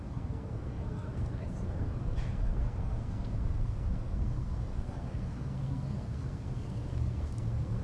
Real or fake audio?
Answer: fake